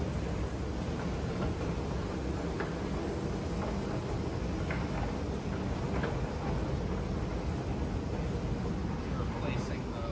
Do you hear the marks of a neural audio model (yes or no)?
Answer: no